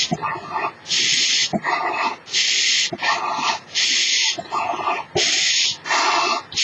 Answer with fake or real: fake